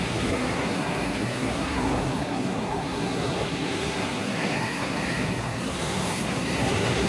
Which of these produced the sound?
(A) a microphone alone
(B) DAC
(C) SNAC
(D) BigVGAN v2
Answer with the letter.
C